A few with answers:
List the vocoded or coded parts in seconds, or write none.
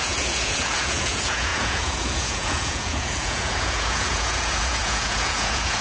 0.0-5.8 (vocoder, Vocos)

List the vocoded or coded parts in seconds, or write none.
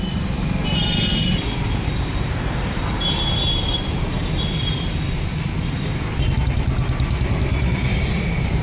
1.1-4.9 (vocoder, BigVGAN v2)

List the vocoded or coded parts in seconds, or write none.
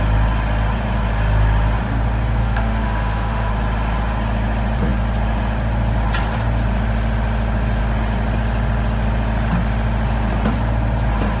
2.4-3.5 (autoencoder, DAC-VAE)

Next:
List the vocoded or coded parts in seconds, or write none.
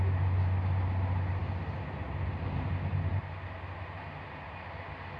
none